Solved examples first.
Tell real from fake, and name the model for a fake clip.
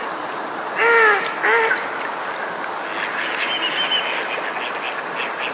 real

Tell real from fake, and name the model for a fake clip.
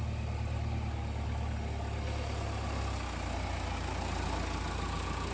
real